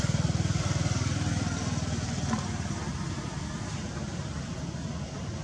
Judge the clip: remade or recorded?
recorded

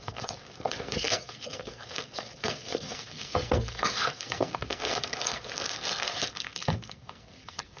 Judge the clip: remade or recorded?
remade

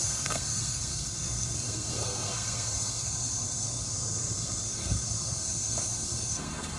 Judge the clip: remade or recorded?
remade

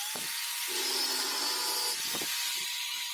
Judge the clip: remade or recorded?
recorded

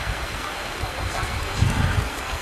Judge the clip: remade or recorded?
remade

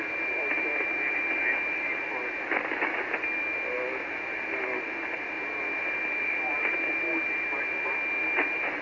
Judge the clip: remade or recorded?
recorded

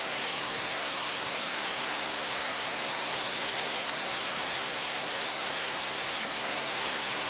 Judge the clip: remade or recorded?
remade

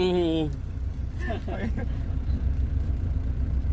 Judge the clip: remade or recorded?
recorded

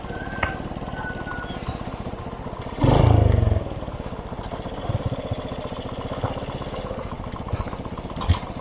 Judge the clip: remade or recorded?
recorded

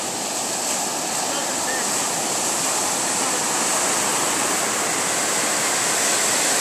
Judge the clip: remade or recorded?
recorded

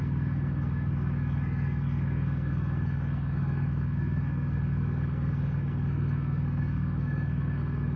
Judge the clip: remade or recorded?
remade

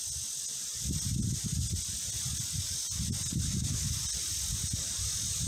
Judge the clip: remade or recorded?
recorded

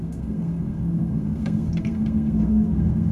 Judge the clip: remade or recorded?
remade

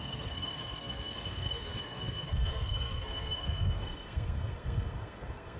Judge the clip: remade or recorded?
remade